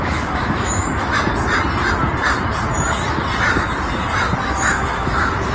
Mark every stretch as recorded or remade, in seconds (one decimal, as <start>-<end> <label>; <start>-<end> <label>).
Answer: 0.0-1.1 remade; 1.1-4.4 recorded; 4.4-5.5 remade